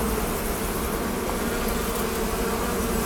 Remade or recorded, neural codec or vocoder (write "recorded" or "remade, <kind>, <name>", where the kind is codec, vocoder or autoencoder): recorded